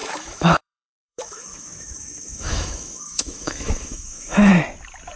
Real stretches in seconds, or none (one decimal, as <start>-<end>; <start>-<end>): 4.5-5.2